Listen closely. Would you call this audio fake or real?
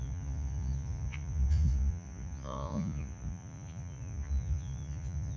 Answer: fake